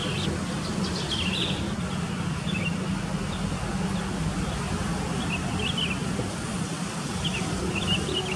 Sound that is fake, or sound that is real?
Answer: real